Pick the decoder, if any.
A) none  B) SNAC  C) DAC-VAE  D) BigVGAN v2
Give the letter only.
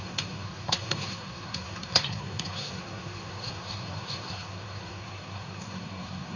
B